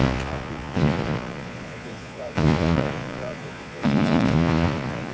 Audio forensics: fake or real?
fake